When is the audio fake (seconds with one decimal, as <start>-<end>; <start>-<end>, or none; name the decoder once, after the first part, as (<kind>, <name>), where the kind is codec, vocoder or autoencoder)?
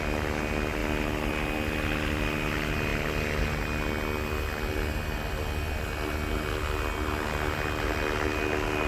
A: none